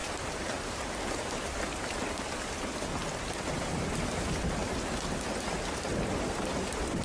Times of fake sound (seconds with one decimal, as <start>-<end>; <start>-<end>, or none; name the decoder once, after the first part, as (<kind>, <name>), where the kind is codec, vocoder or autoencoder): 0.0-4.6 (vocoder, BigVGAN v2); 6.6-7.0